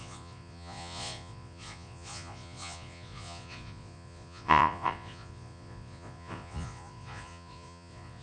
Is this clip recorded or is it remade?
remade